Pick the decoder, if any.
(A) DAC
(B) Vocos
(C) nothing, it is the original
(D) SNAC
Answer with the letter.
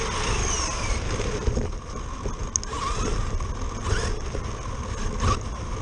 C